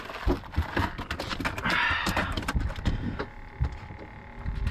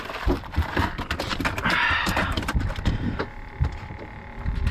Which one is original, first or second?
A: first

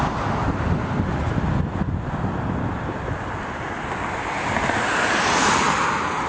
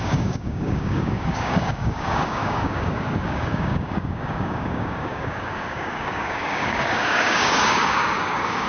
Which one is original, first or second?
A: first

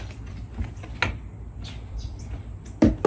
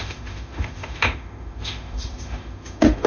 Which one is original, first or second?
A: first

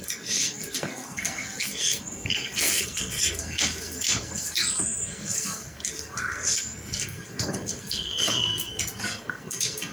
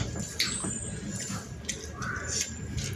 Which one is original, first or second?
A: second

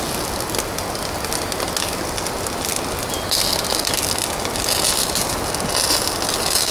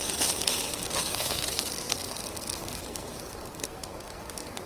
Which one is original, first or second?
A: first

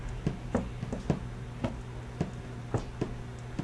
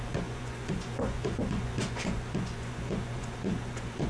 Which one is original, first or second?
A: first